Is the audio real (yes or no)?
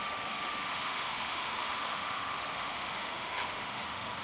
no